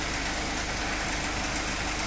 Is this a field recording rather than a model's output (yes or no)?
yes